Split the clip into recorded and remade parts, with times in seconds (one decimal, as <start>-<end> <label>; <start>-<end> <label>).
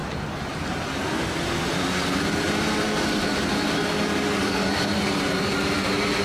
0.0-4.1 recorded; 4.1-4.7 remade; 4.7-6.2 recorded